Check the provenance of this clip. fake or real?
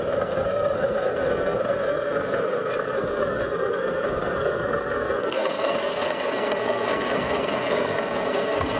fake